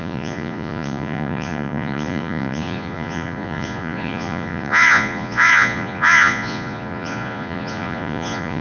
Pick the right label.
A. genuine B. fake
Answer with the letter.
B